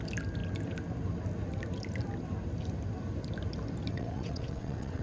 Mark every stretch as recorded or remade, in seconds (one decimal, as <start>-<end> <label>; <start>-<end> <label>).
0.0-3.9 recorded; 3.9-5.0 remade